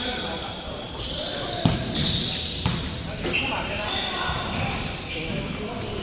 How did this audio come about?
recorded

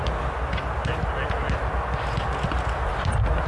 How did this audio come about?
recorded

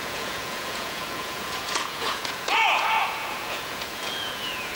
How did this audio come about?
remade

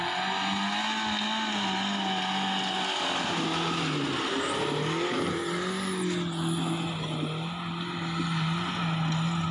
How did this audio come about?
recorded